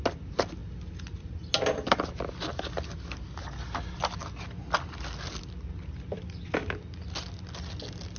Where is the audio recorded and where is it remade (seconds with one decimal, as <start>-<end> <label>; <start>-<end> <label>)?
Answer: 0.0-8.2 recorded